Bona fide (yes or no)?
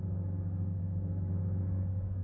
no